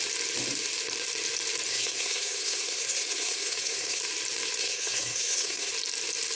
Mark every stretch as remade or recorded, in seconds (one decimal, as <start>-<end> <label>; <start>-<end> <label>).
0.0-1.7 recorded; 1.7-4.0 remade; 4.0-4.6 recorded; 4.6-5.7 remade; 5.7-6.3 recorded

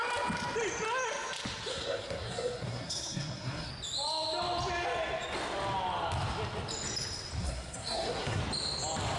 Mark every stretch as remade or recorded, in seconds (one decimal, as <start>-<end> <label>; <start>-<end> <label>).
0.0-1.7 recorded; 1.7-3.7 remade; 3.7-7.4 recorded; 7.4-8.4 remade; 8.4-9.2 recorded